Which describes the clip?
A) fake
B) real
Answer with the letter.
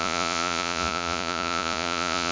A